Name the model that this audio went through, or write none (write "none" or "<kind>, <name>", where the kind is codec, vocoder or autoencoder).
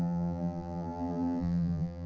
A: vocoder, BigVGAN v2